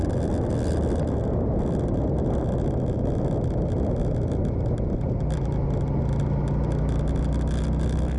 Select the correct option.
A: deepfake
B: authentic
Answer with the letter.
B